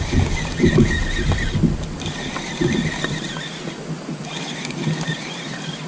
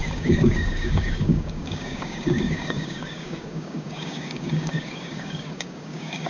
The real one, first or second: first